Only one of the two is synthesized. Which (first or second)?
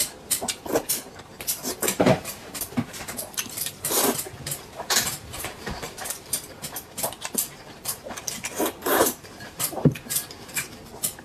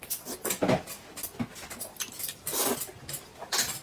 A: first